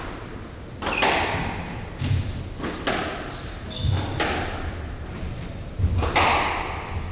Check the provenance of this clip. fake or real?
real